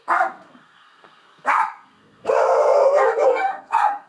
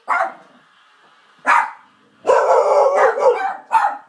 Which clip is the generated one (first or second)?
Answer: first